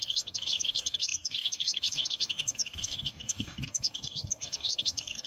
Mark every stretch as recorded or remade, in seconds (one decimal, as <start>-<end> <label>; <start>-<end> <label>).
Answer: 0.0-5.3 remade